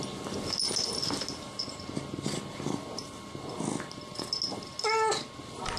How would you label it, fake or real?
real